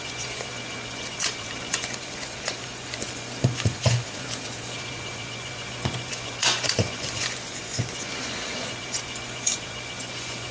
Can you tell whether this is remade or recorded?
remade